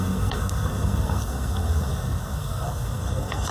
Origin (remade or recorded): remade